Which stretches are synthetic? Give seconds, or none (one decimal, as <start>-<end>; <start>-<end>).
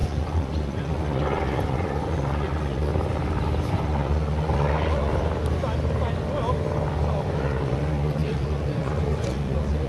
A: 0.0-2.9; 3.7-5.1; 7.3-9.9